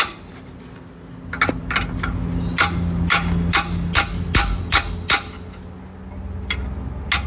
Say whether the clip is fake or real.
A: real